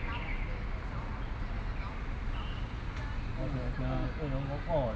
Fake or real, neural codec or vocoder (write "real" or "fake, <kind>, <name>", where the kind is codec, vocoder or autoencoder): real